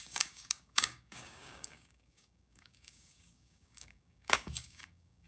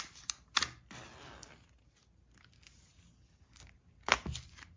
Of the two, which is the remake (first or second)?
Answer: first